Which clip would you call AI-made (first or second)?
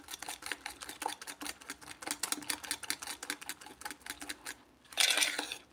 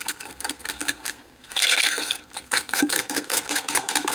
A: second